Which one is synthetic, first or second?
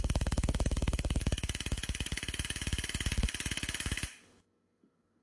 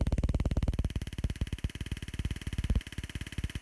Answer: first